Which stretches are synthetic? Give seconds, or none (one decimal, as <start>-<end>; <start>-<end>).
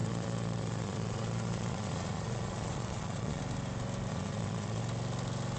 0.0-3.4; 4.1-4.8